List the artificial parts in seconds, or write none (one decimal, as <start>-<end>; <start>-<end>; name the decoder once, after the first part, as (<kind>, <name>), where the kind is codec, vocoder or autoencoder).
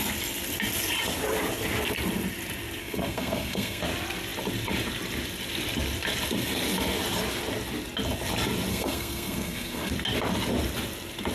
2.8-3.8 (codec, SNAC); 8.7-9.9